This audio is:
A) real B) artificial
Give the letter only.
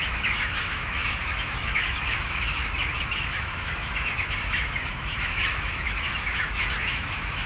B